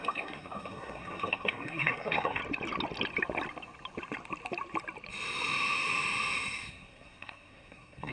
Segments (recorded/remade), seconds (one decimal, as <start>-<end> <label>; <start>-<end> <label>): 0.0-2.4 remade; 2.4-6.7 recorded; 6.7-8.1 remade